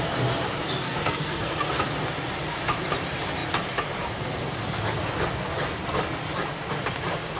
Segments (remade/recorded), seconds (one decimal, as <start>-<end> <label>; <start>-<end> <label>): 0.0-0.8 recorded; 0.8-1.7 remade; 1.7-7.4 recorded